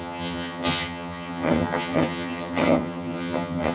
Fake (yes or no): yes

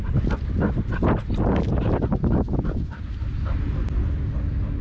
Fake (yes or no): no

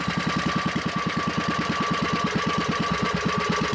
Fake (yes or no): no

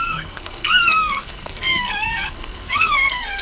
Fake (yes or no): yes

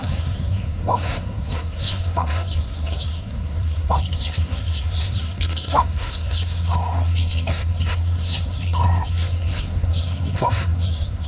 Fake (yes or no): yes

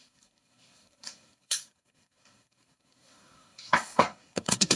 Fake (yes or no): yes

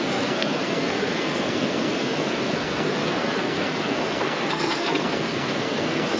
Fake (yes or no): yes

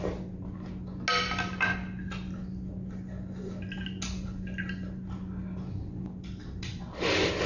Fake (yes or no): no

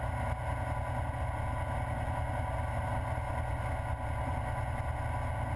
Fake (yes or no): no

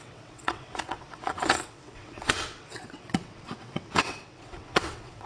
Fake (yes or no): yes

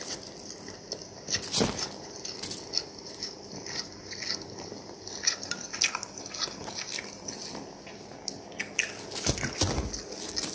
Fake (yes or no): no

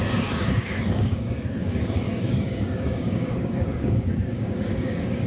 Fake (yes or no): yes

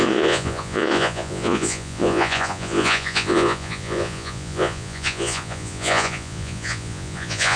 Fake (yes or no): yes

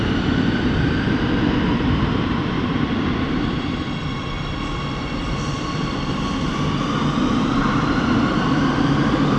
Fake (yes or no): yes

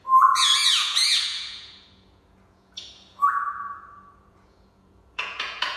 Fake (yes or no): yes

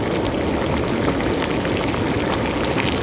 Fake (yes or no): no